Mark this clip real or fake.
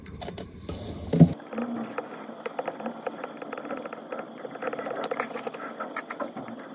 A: real